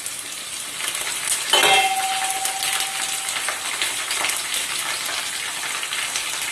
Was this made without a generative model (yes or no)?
yes